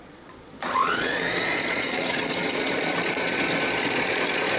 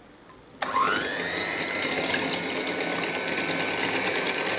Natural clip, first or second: second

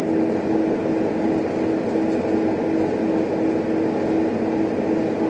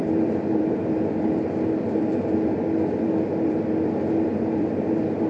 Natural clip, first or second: first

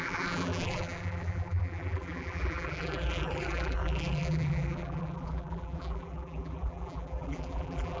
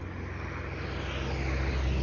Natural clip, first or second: second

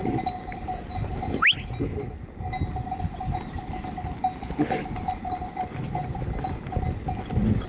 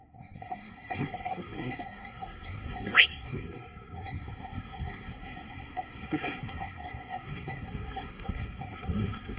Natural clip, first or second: first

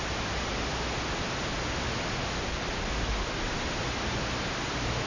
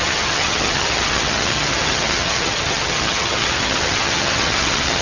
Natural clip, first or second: first